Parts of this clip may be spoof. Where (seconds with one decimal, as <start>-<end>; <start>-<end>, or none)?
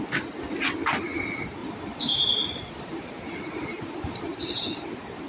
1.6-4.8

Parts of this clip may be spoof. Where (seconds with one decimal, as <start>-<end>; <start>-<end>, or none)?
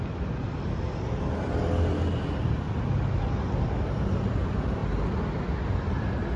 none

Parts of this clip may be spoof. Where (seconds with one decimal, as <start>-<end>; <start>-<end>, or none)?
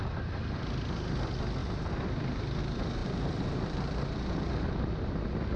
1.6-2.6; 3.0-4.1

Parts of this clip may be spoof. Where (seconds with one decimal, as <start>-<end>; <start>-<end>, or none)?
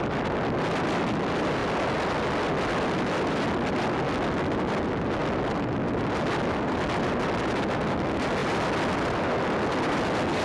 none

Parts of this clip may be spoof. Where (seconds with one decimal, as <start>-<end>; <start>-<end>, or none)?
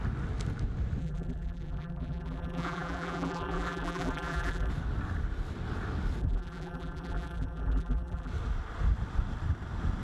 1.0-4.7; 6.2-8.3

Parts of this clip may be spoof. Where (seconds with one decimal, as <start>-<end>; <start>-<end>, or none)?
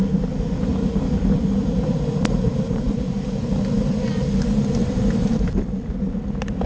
0.7-3.9; 4.8-5.6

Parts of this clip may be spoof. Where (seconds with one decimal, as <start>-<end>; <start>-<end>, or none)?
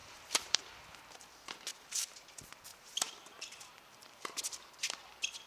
0.0-0.6; 1.7-2.3; 2.7-4.7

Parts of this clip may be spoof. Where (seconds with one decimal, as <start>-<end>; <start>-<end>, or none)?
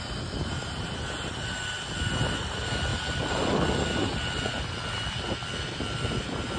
2.9-4.1